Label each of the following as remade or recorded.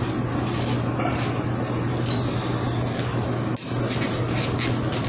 recorded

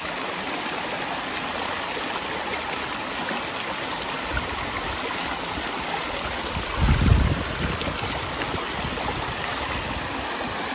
recorded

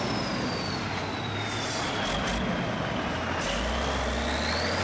recorded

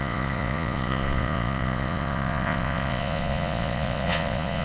remade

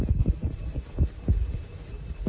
recorded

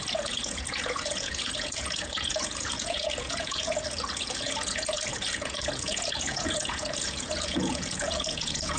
remade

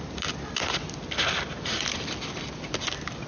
recorded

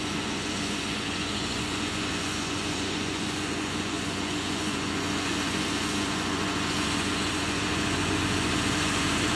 remade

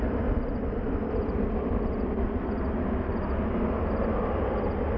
recorded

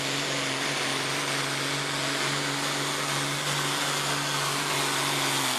recorded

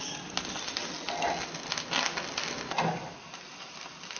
recorded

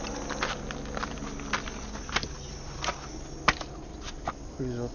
recorded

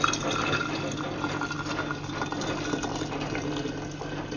recorded